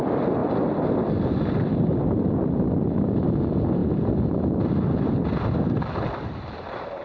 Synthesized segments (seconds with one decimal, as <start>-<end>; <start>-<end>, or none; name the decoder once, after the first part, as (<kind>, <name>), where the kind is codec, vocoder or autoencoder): none